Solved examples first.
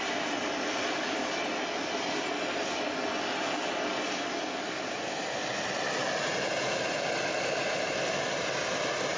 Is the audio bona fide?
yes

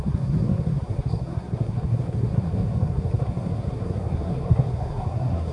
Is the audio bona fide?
no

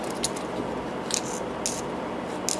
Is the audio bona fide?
yes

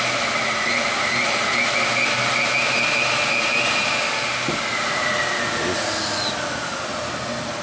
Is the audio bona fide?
yes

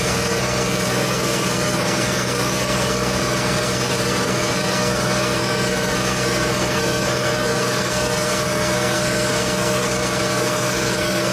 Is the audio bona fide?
no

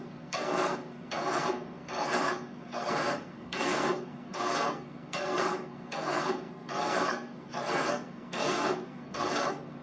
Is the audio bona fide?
no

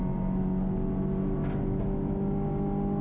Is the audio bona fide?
yes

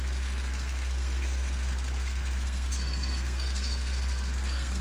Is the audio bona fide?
no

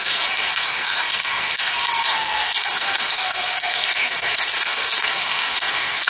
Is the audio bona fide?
no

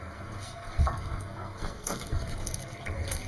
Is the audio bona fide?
no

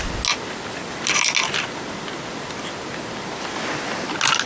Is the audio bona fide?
yes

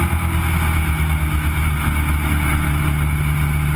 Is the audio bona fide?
yes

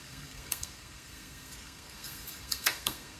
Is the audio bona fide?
no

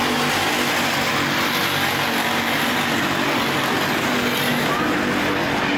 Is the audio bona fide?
yes